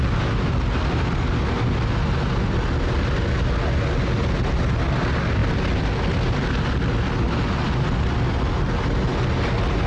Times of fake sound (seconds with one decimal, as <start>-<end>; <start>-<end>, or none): 5.4-6.5